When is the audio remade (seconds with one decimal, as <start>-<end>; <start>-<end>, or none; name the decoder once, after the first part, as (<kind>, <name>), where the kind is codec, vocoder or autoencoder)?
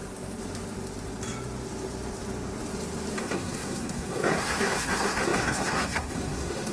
3.2-6.7 (codec, SNAC)